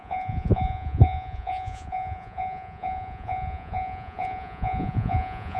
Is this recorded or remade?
remade